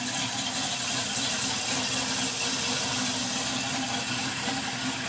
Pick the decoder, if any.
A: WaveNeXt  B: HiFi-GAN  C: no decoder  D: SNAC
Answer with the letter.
C